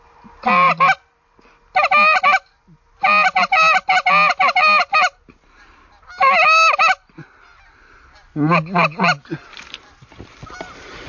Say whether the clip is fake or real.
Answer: real